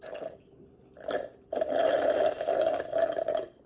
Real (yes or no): yes